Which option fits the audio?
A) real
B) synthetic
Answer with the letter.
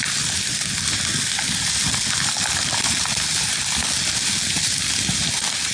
A